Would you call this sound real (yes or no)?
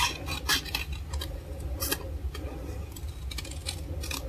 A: yes